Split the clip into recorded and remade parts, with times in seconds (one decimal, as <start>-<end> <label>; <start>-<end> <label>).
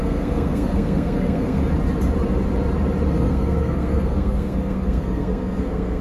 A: 0.0-1.6 remade; 1.6-3.1 recorded; 3.1-6.0 remade